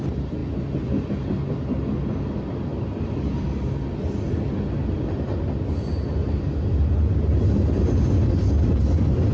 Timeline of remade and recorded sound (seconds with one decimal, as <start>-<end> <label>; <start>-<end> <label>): 0.0-9.3 recorded